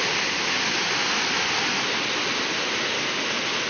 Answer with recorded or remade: recorded